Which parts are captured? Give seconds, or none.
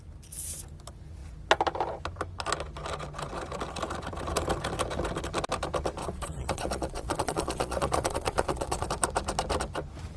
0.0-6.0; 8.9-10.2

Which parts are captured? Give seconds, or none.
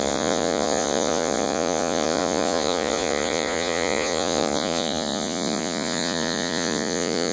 none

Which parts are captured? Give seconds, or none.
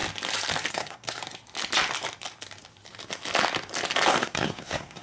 0.0-0.7; 1.2-4.2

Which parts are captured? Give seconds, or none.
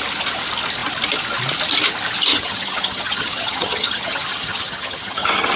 0.0-2.3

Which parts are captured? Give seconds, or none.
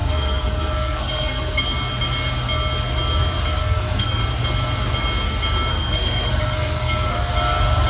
1.6-3.6; 4.2-5.7; 7.3-7.9